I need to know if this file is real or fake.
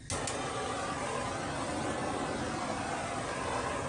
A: real